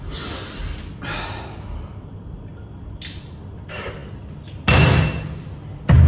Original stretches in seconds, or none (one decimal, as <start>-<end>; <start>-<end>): 0.0-6.1